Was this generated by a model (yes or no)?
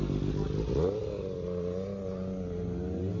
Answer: no